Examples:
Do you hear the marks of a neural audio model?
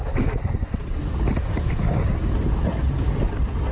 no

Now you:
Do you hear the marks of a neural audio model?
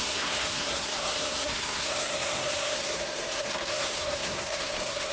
yes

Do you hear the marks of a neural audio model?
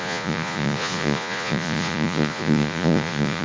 yes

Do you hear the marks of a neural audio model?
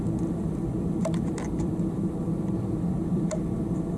yes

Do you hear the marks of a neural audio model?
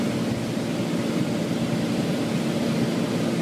no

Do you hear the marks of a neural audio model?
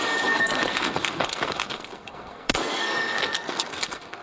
yes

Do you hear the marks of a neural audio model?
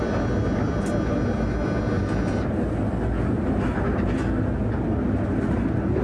no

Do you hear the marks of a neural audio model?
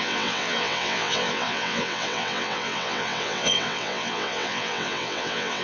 yes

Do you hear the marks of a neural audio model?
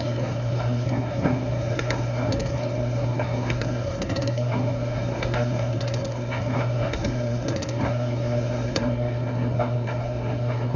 yes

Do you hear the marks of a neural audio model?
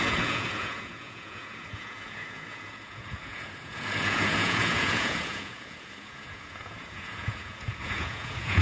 yes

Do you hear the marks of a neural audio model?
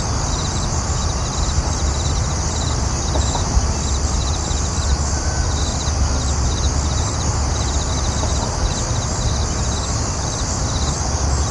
no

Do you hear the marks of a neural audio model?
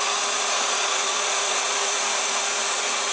yes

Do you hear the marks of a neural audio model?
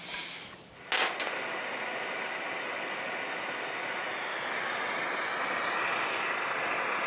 no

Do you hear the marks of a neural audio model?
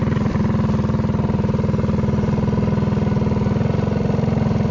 no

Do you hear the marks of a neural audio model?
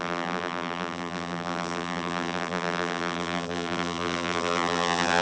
yes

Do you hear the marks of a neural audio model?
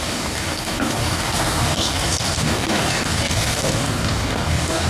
yes